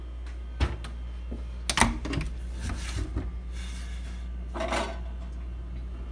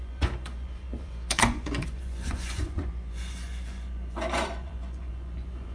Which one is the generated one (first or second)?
second